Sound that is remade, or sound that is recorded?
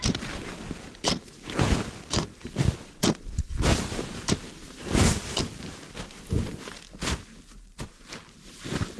recorded